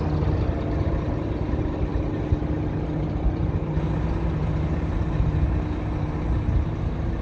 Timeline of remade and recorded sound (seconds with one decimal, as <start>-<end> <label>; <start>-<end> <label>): 0.0-7.2 recorded